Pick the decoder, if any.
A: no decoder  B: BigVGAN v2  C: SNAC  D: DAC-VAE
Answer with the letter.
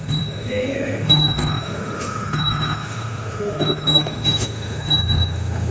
D